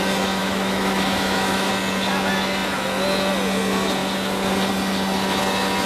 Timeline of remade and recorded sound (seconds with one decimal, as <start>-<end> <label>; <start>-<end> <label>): 0.0-0.4 recorded; 0.4-1.7 remade; 1.7-5.9 recorded